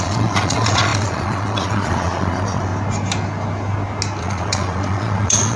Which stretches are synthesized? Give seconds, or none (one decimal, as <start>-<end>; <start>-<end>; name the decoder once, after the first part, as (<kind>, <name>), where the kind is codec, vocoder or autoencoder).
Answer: 0.0-2.7 (vocoder, Vocos); 4.2-5.6